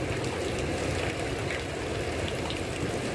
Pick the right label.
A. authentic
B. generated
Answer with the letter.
A